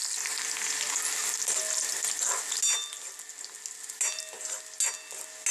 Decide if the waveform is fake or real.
real